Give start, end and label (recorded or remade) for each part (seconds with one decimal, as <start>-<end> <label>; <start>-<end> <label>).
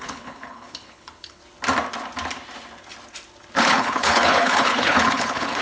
0.0-1.4 remade; 1.4-3.6 recorded; 3.6-5.6 remade